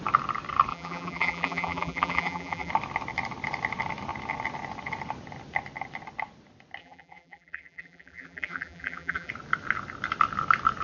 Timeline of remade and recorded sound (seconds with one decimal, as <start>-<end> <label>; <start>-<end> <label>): 0.0-0.7 recorded; 0.7-2.7 remade; 2.7-6.8 recorded; 6.8-9.3 remade; 9.3-10.8 recorded